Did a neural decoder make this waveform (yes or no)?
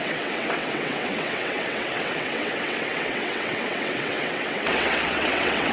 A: yes